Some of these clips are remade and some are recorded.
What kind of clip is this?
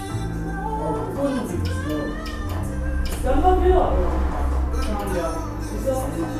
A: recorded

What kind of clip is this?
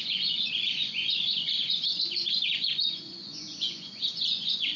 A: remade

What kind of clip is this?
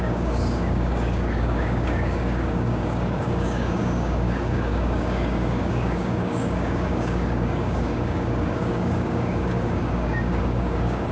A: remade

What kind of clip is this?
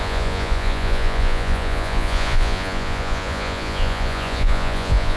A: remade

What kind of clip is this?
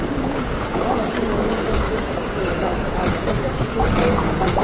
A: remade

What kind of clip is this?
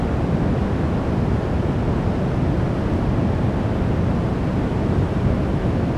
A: recorded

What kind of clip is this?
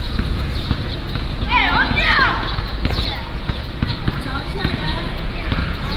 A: remade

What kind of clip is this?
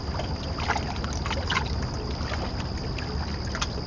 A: recorded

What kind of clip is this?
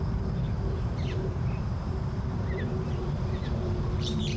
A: remade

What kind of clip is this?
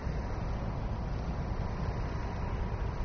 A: recorded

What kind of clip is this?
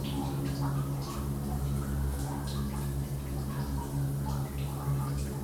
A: recorded